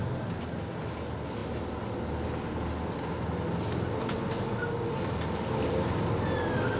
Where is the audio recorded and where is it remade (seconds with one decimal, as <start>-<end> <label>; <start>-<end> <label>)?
0.0-6.8 recorded